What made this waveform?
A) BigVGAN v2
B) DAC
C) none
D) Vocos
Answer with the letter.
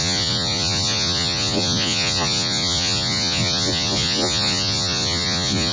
D